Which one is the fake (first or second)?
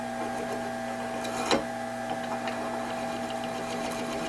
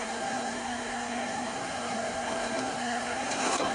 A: second